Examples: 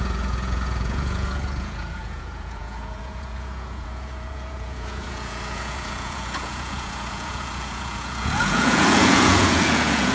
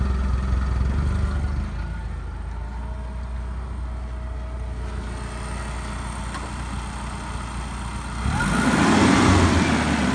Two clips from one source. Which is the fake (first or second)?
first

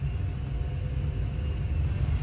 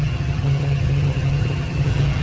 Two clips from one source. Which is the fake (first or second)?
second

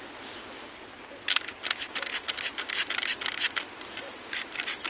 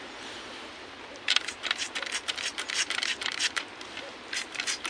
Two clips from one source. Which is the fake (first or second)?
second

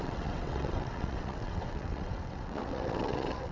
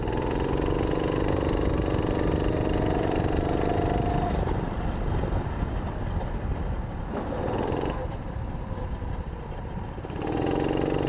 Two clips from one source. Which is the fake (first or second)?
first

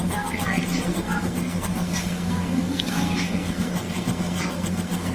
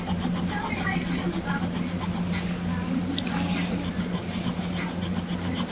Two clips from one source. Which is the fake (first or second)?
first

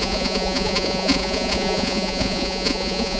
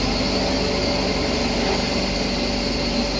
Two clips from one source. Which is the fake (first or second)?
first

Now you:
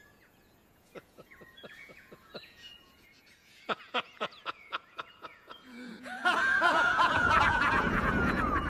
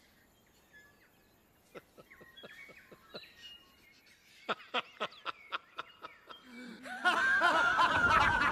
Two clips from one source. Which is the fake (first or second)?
first